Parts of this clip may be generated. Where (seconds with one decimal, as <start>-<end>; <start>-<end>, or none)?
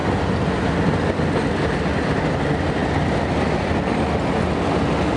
none